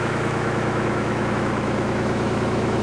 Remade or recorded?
remade